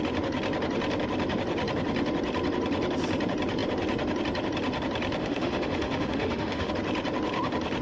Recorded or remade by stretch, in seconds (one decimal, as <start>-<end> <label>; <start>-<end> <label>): 0.0-5.2 recorded; 5.2-6.7 remade; 6.7-7.8 recorded